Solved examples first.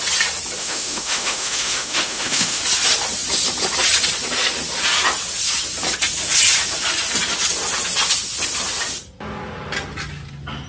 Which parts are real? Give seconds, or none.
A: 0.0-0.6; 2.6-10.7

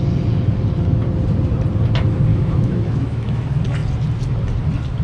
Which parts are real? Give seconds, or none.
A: 0.0-2.3; 3.4-5.0